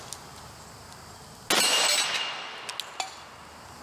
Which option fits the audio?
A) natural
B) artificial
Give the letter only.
A